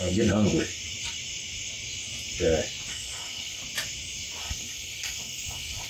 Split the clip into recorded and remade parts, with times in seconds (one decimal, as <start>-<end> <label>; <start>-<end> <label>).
0.0-0.8 remade; 0.8-2.9 recorded; 2.9-3.6 remade; 3.6-4.4 recorded; 4.4-5.9 remade